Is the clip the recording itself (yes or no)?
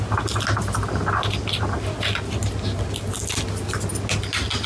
yes